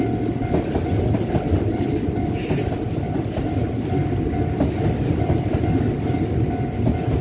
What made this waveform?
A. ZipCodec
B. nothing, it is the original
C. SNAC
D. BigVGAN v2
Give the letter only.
B